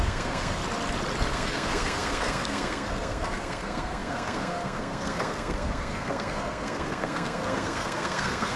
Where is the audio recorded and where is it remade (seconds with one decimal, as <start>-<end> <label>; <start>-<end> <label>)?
0.0-0.6 remade; 0.6-1.3 recorded; 1.3-8.6 remade